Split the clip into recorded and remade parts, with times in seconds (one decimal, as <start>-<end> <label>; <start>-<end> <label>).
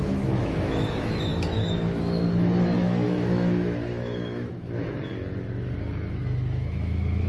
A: 0.0-5.1 remade; 5.1-5.9 recorded; 5.9-7.3 remade